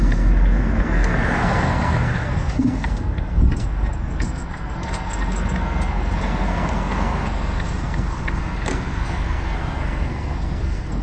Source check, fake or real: fake